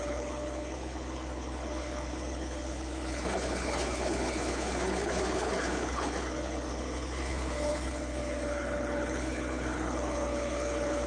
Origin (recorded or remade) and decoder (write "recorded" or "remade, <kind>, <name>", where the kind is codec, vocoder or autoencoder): remade, codec, HILCodec